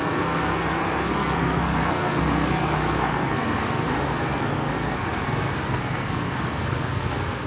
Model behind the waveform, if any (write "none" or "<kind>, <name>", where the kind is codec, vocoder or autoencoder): codec, SNAC